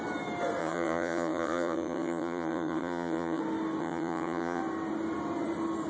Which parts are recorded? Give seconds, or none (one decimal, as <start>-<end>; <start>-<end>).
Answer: 0.0-0.6; 3.4-3.8; 4.6-5.9

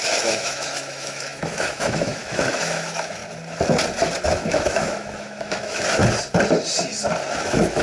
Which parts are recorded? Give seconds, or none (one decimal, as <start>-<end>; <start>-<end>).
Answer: 3.2-4.3; 6.0-7.3

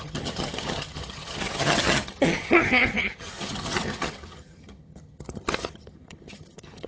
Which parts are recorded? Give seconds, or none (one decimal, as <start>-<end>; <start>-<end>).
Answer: none

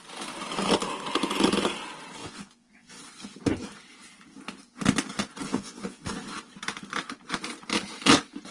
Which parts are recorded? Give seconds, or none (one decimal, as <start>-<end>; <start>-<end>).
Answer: 0.0-2.2; 3.0-5.5; 6.1-8.5